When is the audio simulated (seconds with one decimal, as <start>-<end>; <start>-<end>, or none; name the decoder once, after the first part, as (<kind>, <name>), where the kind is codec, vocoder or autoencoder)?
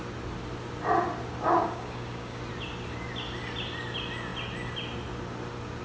1.6-2.4 (codec, DAC)